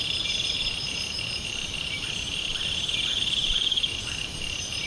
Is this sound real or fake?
fake